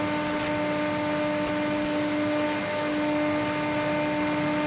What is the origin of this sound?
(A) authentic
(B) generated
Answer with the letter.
A